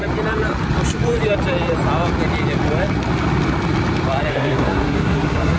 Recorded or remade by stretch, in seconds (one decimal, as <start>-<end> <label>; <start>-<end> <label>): 0.0-4.3 recorded; 4.3-5.6 remade